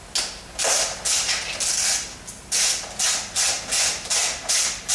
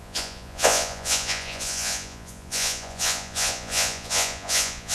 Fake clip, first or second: second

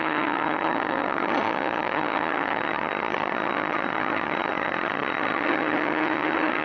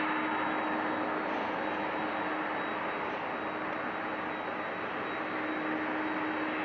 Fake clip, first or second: first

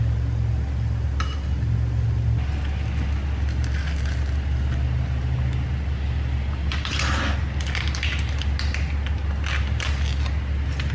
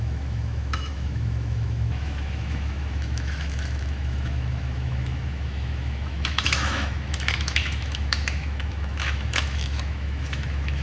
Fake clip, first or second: second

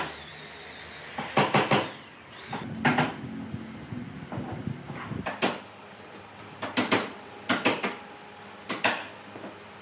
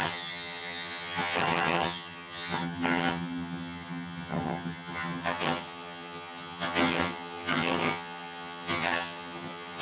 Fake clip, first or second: second